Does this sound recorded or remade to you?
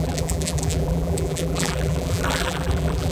remade